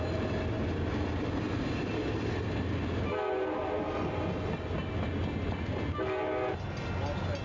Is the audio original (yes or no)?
yes